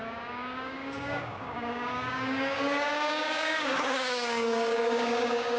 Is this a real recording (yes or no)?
no